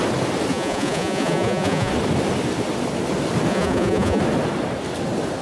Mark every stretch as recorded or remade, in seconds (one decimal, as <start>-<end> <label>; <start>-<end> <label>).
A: 0.0-0.5 recorded; 0.5-1.9 remade; 1.9-3.5 recorded; 3.5-4.2 remade; 4.2-5.4 recorded